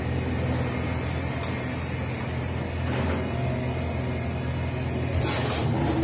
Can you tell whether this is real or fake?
real